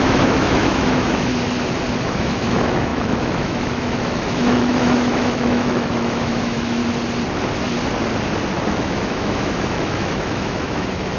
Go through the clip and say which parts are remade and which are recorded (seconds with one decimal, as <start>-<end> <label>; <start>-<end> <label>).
0.0-1.3 remade; 1.3-2.0 recorded; 2.0-6.8 remade; 6.8-8.8 recorded; 8.8-11.2 remade